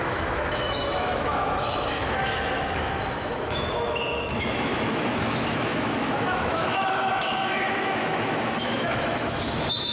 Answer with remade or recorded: remade